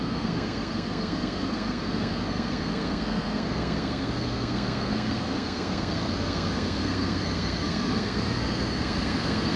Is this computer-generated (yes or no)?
yes